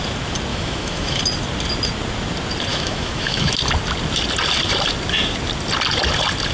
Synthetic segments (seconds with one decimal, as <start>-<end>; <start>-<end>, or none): 0.5-1.2; 2.7-3.5